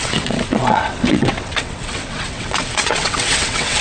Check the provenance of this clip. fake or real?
fake